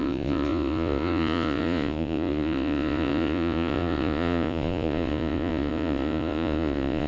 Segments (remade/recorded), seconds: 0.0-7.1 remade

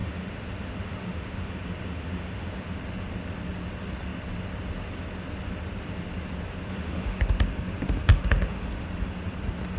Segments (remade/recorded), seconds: 0.0-2.7 remade; 2.7-6.7 recorded; 6.7-7.2 remade; 7.2-8.1 recorded; 8.1-8.7 remade; 8.7-9.8 recorded

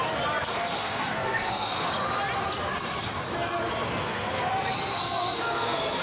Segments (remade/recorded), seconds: 0.0-0.5 recorded; 0.5-1.9 remade; 1.9-4.0 recorded; 4.0-4.5 remade; 4.5-4.9 recorded; 4.9-6.0 remade

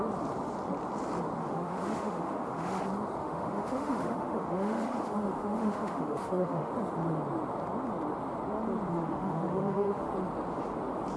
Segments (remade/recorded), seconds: 0.0-1.4 recorded; 1.4-2.8 remade; 2.8-3.2 recorded; 3.2-6.7 remade; 6.7-8.9 recorded; 8.9-10.1 remade; 10.1-11.2 recorded

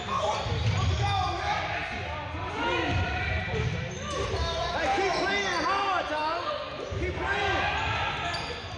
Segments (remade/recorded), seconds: 0.0-8.8 recorded

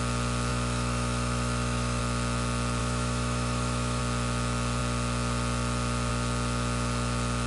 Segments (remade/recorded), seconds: 0.0-0.5 recorded; 0.5-2.0 remade; 2.0-2.8 recorded; 2.8-4.0 remade; 4.0-7.5 recorded

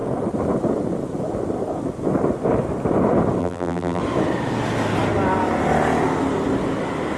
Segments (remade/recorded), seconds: 0.0-3.4 recorded; 3.4-4.0 remade; 4.0-7.2 recorded